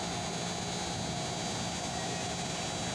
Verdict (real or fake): real